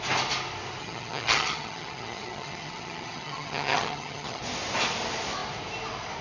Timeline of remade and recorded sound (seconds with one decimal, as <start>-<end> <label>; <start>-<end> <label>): 0.0-0.8 recorded; 0.8-4.4 remade; 4.4-6.2 recorded